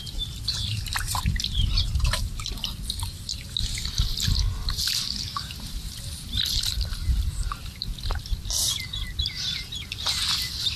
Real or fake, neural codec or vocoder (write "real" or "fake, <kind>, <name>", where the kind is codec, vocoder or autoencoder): real